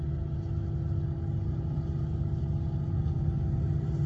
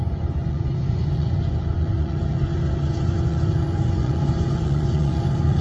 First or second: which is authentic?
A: first